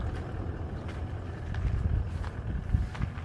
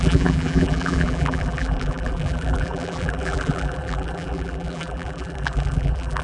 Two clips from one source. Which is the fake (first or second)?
second